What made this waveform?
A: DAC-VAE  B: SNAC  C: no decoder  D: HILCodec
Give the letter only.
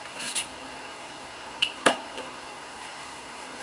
B